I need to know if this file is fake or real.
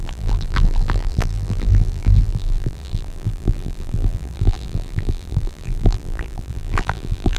fake